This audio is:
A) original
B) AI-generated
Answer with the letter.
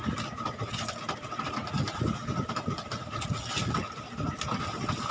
A